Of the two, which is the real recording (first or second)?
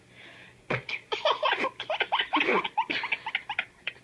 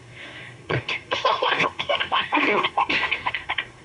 first